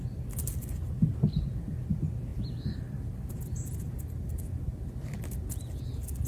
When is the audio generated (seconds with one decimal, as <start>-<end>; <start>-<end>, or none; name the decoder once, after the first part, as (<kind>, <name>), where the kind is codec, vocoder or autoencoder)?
none